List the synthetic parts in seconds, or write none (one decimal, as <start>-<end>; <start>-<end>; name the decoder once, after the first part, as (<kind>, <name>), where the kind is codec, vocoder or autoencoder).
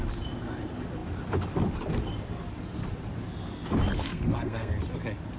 4.0-4.7 (codec, SNAC)